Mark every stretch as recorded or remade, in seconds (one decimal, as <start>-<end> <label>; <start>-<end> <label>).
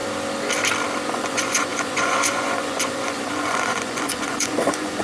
0.0-1.1 recorded; 1.1-5.0 remade